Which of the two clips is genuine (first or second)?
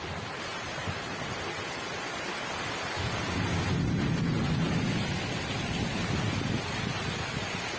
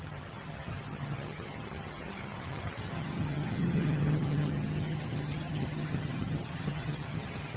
first